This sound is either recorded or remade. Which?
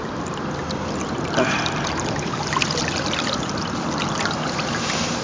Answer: remade